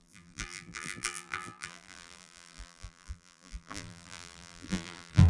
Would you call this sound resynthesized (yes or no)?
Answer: yes